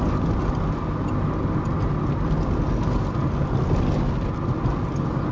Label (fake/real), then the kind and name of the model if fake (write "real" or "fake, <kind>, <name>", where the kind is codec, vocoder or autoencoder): real